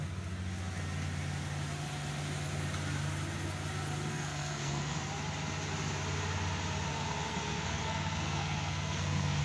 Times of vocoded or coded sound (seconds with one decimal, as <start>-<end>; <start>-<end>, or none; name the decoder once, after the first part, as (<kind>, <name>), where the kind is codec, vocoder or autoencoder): 4.1-5.0 (codec, SNAC); 6.9-9.4